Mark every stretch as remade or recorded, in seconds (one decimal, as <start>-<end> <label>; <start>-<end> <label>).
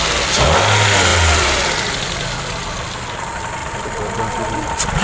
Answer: 0.0-5.0 recorded